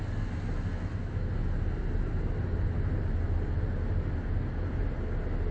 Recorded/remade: recorded